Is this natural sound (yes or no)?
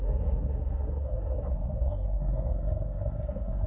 no